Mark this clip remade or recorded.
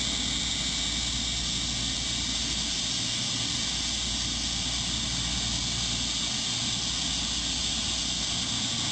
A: recorded